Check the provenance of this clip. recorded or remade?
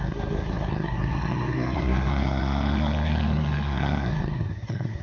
remade